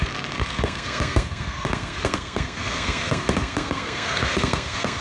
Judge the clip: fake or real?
fake